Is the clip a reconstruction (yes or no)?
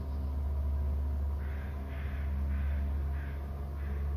no